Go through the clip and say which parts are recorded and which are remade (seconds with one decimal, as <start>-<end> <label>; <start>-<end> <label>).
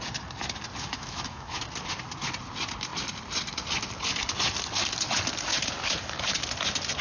0.0-0.8 recorded; 0.8-1.6 remade; 1.6-7.0 recorded